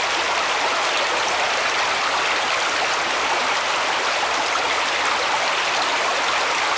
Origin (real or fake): real